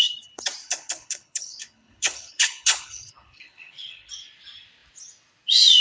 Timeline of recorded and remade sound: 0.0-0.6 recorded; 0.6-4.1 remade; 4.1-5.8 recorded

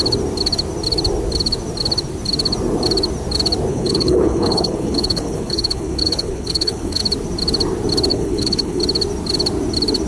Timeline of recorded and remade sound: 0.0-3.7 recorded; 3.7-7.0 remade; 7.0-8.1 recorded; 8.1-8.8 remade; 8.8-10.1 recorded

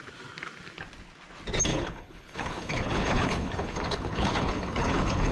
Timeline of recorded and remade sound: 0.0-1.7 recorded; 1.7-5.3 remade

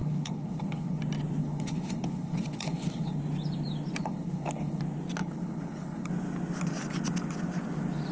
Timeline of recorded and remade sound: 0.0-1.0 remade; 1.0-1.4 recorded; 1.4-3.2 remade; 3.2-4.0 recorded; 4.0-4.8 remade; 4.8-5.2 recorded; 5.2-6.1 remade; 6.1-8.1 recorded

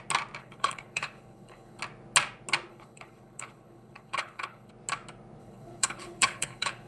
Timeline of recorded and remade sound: 0.0-0.4 recorded; 0.4-1.8 remade; 1.8-2.7 recorded; 2.7-4.7 remade; 4.7-5.4 recorded; 5.4-6.9 remade